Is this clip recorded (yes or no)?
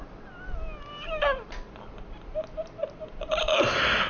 yes